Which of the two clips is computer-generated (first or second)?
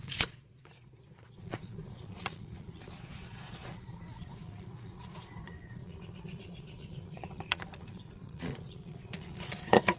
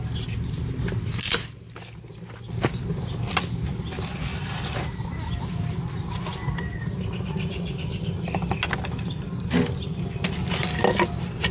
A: first